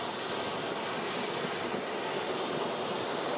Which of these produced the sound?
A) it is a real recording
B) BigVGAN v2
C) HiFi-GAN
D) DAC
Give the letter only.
A